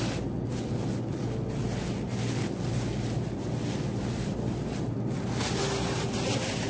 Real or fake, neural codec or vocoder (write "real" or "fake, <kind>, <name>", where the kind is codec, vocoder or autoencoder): real